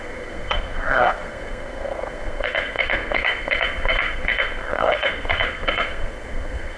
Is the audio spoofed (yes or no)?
yes